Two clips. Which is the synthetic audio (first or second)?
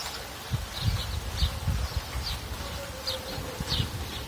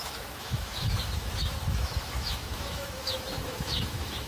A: second